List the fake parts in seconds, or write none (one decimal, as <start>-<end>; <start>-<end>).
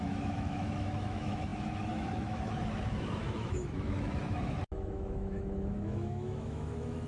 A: 0.0-7.1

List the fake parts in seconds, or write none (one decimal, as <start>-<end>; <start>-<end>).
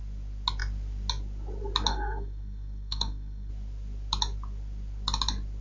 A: 1.9-3.5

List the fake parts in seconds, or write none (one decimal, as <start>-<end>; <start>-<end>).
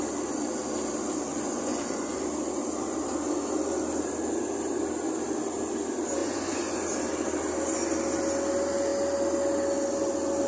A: 1.3-2.2; 6.2-6.8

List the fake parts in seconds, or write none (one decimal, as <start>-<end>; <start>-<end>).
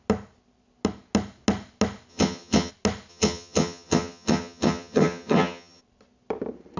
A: 2.1-2.7; 3.1-5.8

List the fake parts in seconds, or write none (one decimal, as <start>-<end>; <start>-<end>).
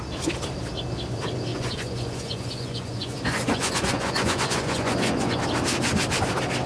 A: 1.5-5.4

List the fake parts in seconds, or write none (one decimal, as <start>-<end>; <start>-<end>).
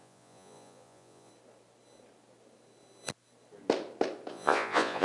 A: 0.0-1.3; 4.3-5.0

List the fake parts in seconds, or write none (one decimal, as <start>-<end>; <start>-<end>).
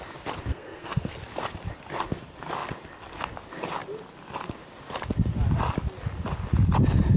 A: 0.5-1.1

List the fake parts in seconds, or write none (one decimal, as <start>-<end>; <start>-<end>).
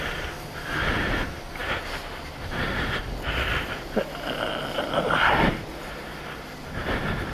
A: none